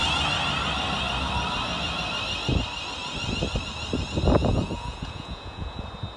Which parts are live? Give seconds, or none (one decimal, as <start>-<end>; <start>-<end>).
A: 0.0-4.4; 5.8-6.2